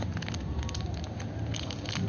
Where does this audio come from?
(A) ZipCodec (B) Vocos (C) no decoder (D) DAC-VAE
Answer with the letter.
C